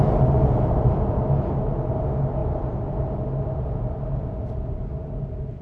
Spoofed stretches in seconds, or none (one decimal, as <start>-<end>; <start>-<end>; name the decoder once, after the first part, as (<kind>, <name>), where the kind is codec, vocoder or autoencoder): none